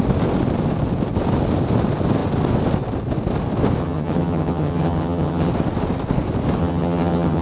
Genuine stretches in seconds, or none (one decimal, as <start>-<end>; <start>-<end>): 0.0-3.8; 5.5-6.6